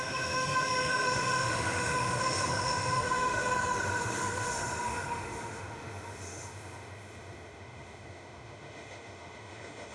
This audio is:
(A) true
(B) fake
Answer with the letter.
B